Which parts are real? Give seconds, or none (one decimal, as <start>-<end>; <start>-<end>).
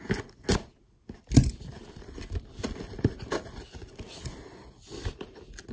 0.0-5.7